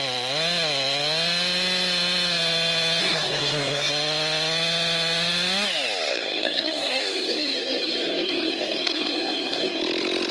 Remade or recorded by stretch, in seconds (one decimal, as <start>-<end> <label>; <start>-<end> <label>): 0.0-3.0 recorded; 3.0-3.9 remade; 3.9-6.1 recorded; 6.1-9.8 remade; 9.8-10.3 recorded